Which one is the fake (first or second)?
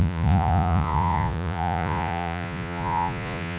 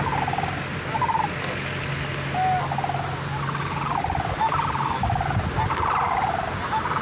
first